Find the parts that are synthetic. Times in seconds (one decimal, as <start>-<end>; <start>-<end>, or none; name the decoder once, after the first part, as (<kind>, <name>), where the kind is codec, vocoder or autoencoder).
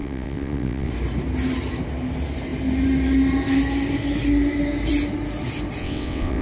0.0-0.9 (vocoder, WaveNeXt); 5.8-6.4